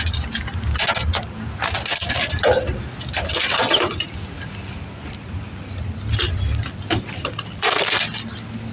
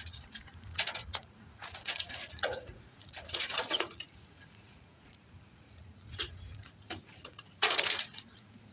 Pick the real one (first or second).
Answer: first